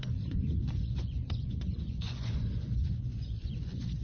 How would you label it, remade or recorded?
remade